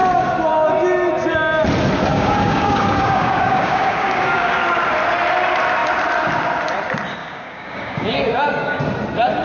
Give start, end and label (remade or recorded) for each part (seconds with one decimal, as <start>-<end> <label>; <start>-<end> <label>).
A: 0.0-2.1 recorded; 2.1-4.6 remade; 4.6-7.2 recorded; 7.2-8.8 remade; 8.8-9.4 recorded